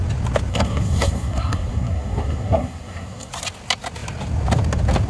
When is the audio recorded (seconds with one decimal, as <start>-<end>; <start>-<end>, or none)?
0.0-0.5; 3.3-5.1